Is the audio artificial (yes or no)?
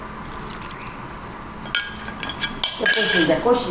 no